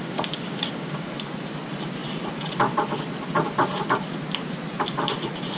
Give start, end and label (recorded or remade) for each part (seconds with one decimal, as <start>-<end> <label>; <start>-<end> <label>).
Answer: 0.0-1.1 remade; 1.1-5.6 recorded